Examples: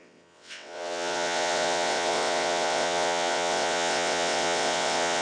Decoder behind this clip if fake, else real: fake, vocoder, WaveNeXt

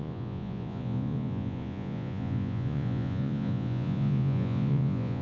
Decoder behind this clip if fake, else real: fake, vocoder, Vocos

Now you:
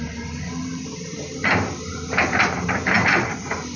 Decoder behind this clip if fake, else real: real